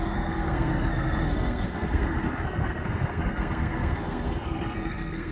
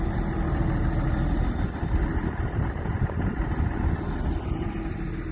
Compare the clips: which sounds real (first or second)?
second